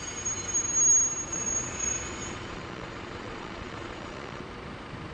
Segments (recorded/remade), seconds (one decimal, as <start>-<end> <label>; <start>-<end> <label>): 0.0-1.3 recorded; 1.3-4.4 remade; 4.4-5.1 recorded